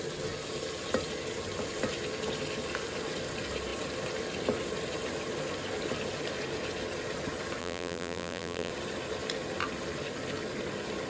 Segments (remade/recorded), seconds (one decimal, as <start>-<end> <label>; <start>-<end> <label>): 0.0-7.6 recorded; 7.6-8.7 remade; 8.7-11.1 recorded